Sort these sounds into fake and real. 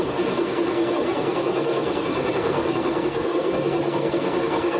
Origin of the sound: fake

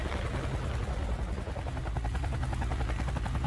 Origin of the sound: real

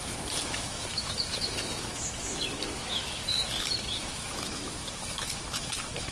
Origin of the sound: fake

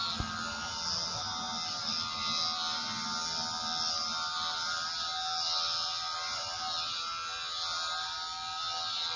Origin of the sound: real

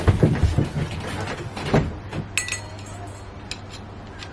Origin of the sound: real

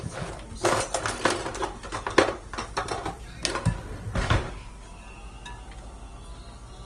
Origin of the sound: real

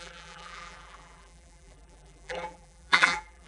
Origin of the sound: fake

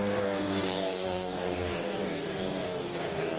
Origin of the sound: fake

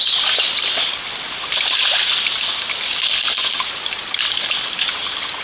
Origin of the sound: fake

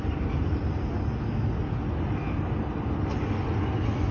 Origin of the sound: real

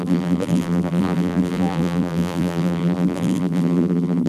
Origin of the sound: fake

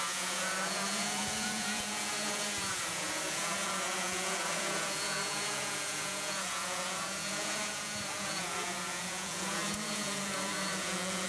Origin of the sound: fake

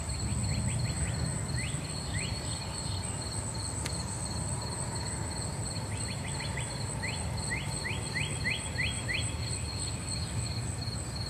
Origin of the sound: real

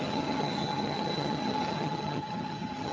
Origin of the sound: fake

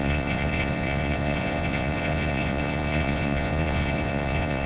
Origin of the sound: fake